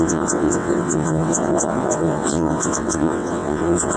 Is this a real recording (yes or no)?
no